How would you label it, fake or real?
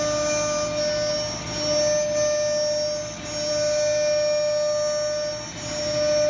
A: real